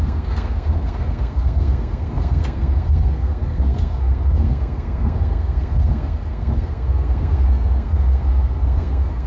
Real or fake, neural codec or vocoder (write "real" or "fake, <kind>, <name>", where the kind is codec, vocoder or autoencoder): fake, codec, SNAC